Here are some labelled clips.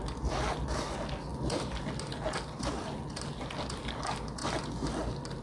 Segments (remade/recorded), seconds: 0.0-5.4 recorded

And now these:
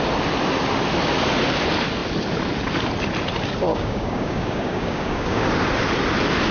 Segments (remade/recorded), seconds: 0.0-3.7 recorded; 3.7-5.5 remade; 5.5-6.5 recorded

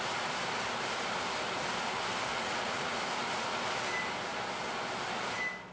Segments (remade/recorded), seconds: 0.0-2.3 recorded; 2.3-3.0 remade; 3.0-5.7 recorded

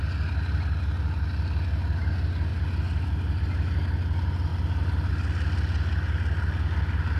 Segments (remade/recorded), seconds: 0.0-7.2 recorded

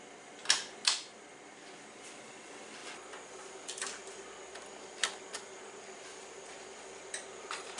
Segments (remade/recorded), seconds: 0.0-7.8 recorded

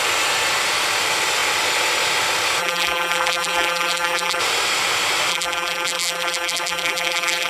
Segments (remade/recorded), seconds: 0.0-2.6 recorded; 2.6-4.4 remade; 4.4-5.3 recorded; 5.3-7.5 remade

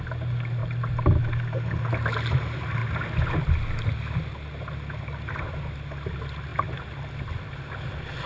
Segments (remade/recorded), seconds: 0.0-8.3 recorded

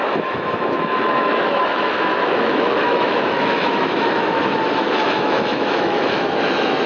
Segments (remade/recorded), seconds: 0.0-4.4 remade; 4.4-4.9 recorded; 4.9-6.9 remade